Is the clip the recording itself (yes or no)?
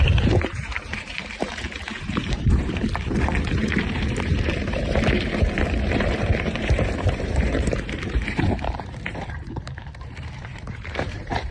no